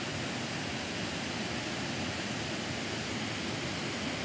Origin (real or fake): real